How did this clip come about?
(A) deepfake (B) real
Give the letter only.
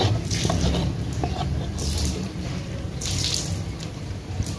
A